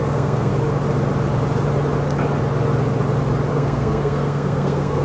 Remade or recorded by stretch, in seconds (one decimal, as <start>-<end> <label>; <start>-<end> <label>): 0.0-0.5 remade; 0.5-3.5 recorded; 3.5-5.0 remade